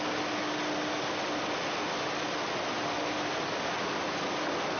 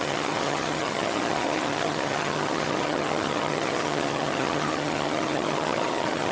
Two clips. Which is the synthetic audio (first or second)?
second